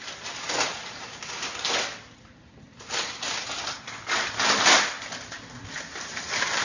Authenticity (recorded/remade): recorded